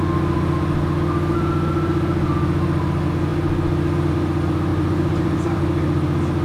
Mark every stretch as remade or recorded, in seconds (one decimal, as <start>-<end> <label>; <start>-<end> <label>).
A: 0.0-4.7 recorded; 4.7-5.6 remade; 5.6-6.4 recorded